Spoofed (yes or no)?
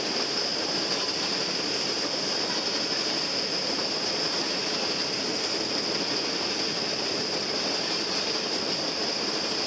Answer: no